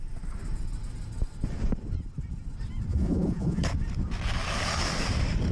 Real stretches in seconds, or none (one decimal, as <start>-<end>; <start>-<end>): 0.0-2.9; 3.6-5.5